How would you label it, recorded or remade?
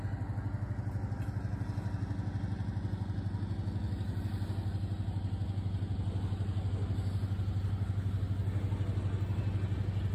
recorded